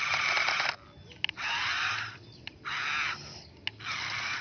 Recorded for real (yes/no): yes